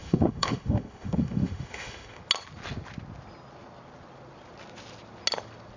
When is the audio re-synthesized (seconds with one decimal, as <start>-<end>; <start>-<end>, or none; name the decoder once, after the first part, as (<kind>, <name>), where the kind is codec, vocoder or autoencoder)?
0.0-2.2 (autoencoder, DAC-VAE)